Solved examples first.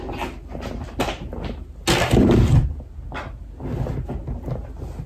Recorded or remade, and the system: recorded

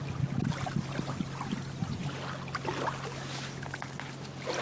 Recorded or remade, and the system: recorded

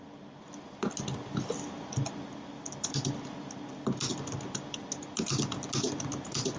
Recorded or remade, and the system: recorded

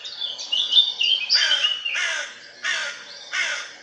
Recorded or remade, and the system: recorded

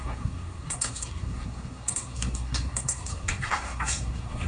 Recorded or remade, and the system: remade, codec, SNAC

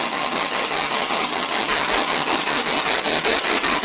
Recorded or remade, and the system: remade, vocoder, HiFi-GAN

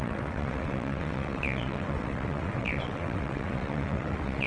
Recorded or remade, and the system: remade, vocoder, WaveNeXt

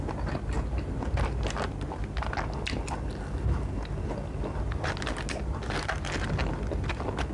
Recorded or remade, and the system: recorded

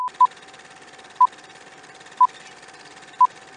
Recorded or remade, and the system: recorded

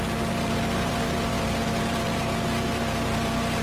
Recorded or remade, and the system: remade, vocoder, BigVGAN v2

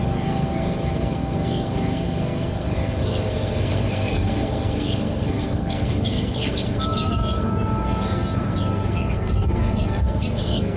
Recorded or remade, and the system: remade, codec, SNAC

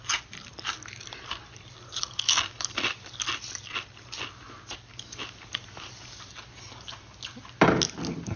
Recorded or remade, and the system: recorded